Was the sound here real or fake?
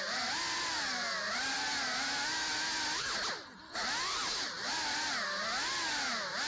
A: real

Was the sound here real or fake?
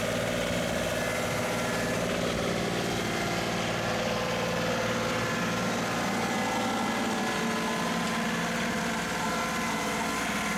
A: real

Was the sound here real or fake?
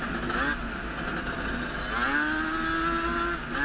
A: real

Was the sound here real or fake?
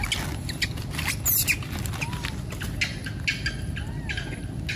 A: real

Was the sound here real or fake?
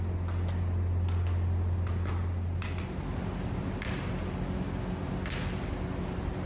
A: real